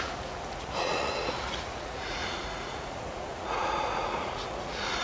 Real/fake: fake